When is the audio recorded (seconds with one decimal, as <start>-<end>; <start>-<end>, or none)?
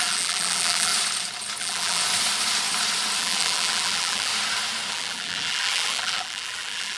0.9-1.6; 2.0-3.2; 4.3-4.9